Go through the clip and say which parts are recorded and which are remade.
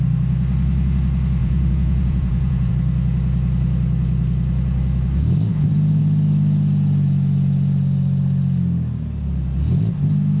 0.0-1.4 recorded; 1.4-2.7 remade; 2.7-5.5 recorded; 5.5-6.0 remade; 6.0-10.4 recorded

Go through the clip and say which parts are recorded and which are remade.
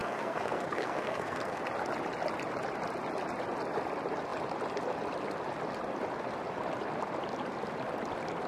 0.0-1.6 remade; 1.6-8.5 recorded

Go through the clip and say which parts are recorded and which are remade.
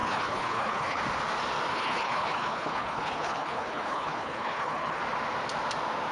0.0-1.0 remade; 1.0-1.7 recorded; 1.7-5.0 remade; 5.0-6.1 recorded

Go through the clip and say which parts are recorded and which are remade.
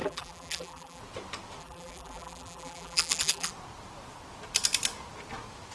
0.0-1.0 remade; 1.0-1.6 recorded; 1.6-3.5 remade; 3.5-5.7 recorded